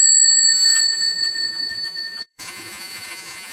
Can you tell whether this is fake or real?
fake